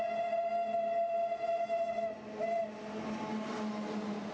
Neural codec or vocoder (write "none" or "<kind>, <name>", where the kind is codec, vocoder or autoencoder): none